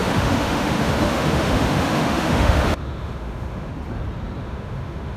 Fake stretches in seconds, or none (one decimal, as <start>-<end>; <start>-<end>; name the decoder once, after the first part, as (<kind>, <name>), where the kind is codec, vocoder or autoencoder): 0.0-3.7 (autoencoder, DAC-VAE); 4.4-5.2